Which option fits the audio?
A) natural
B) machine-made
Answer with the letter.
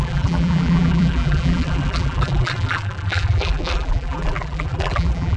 B